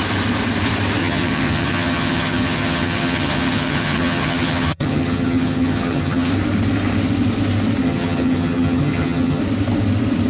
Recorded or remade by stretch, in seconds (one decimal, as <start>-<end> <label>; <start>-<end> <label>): 0.0-1.0 recorded; 1.0-6.3 remade; 6.3-7.8 recorded; 7.8-9.4 remade; 9.4-10.3 recorded